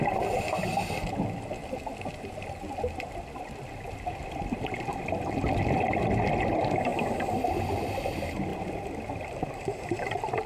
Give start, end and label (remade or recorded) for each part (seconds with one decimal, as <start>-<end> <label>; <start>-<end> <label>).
0.0-4.9 recorded; 4.9-5.9 remade; 5.9-10.5 recorded